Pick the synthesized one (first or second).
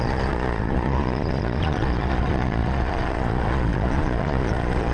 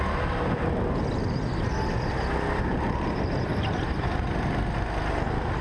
first